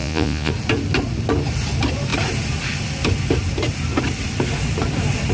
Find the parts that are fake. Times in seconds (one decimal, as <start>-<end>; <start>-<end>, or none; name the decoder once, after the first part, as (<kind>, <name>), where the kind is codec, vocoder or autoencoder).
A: 0.0-0.5 (vocoder, Vocos)